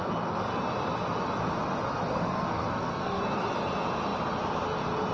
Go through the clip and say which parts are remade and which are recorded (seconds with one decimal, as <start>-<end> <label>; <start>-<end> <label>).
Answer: 0.0-2.1 recorded; 2.1-3.2 remade; 3.2-5.1 recorded